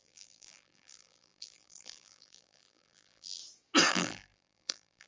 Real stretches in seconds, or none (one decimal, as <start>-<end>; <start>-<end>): 3.4-3.9